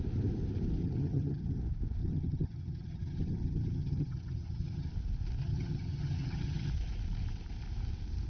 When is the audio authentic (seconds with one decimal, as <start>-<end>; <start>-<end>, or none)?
0.0-0.8; 1.6-2.0; 4.9-5.4; 6.7-8.3